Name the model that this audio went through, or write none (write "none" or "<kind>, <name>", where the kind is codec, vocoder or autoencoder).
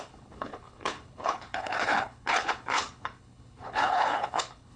codec, HILCodec